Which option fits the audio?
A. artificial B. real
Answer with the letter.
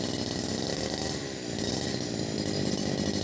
B